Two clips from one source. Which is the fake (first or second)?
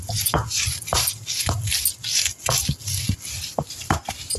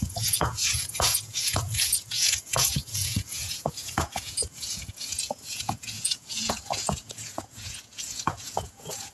second